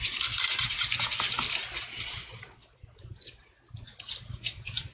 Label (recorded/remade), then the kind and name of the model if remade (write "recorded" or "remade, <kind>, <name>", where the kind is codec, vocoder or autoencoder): remade, vocoder, BigVGAN v2